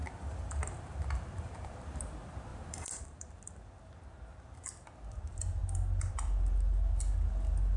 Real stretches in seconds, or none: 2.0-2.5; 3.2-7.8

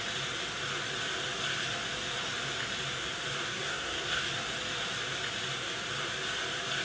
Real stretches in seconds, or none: 0.0-3.5; 4.2-6.8

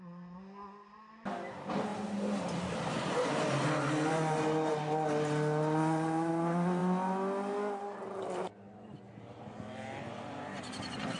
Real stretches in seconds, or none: 0.0-11.2

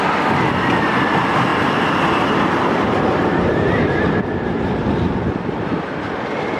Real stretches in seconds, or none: 0.0-6.6

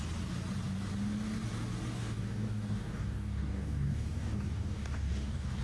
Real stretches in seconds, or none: 0.0-1.9

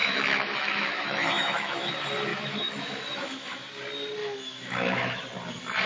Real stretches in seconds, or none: 1.9-2.3; 3.7-4.2; 5.2-5.9

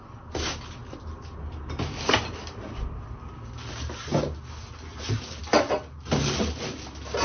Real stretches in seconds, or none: 0.0-7.2